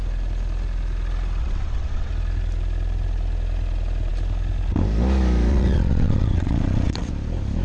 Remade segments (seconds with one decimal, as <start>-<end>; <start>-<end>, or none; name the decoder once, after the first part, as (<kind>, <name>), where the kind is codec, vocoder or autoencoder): 1.4-2.1 (vocoder, WaveNeXt); 5.5-7.1